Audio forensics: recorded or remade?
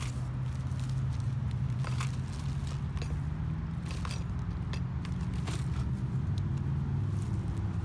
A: recorded